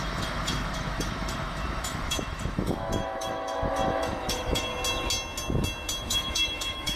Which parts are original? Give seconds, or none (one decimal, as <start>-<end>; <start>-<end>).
4.7-6.0